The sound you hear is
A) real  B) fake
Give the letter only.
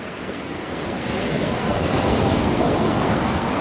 B